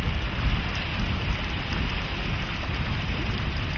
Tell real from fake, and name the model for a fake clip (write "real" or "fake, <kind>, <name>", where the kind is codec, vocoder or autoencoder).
real